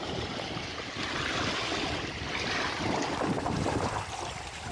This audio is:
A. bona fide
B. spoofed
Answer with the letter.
A